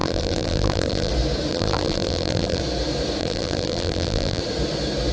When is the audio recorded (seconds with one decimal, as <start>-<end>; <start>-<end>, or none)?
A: 1.1-1.5; 2.6-3.2; 4.4-5.1